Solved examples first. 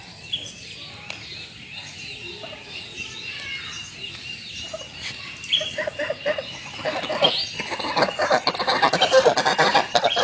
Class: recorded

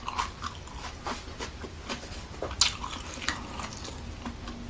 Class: recorded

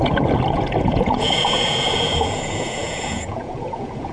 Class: remade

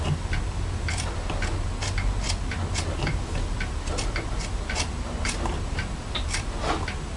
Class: recorded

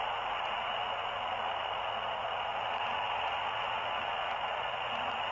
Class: remade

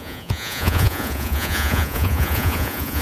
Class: remade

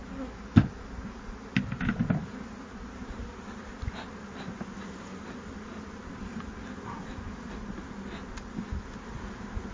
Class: recorded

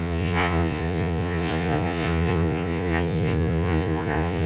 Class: remade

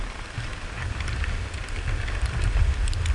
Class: recorded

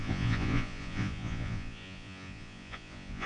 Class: remade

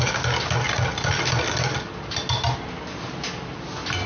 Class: recorded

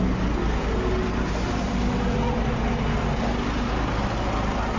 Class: recorded